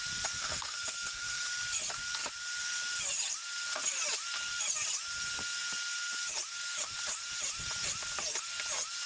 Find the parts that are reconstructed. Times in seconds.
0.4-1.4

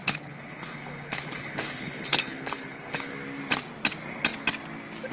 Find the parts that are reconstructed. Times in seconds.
0.0-3.1

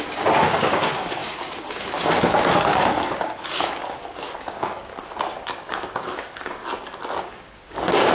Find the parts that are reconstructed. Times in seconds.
0.0-4.9; 5.5-6.6; 7.2-8.1

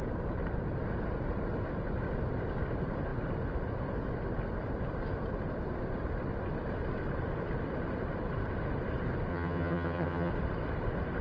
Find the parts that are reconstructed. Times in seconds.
9.3-10.3

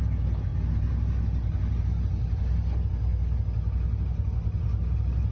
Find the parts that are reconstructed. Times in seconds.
none

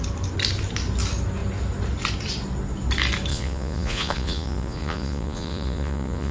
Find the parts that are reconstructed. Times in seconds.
3.3-6.3

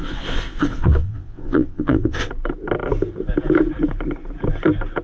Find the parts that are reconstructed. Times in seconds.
0.0-2.3